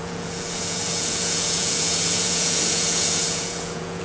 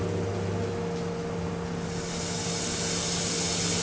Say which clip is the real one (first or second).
second